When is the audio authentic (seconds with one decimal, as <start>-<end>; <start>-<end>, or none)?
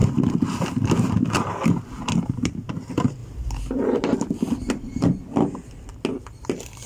0.0-6.9